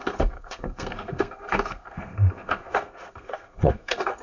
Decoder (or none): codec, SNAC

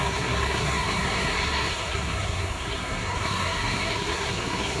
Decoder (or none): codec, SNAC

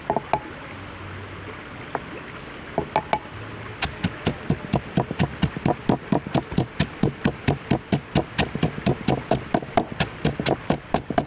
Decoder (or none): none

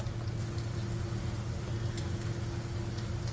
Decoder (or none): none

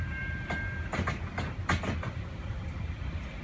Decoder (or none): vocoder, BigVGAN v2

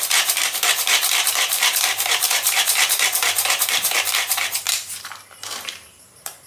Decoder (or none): vocoder, BigVGAN v2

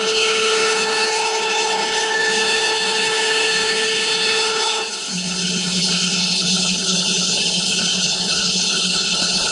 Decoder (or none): codec, HILCodec